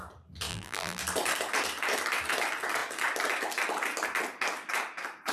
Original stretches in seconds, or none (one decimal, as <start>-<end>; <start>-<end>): 0.0-0.5; 1.0-5.3

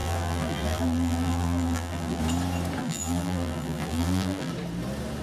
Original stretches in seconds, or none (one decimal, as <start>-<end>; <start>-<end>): 2.2-2.8; 4.5-5.2